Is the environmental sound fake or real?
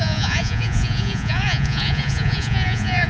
fake